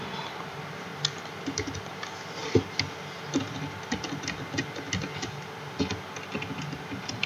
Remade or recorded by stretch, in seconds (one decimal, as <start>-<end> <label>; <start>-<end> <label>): 0.0-7.3 recorded